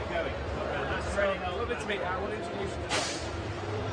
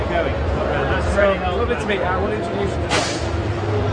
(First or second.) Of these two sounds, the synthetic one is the first